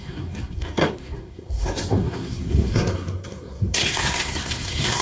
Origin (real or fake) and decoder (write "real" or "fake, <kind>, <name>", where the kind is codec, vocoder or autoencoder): fake, codec, SNAC